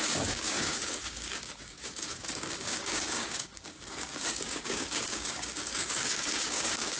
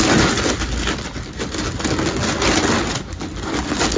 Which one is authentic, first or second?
second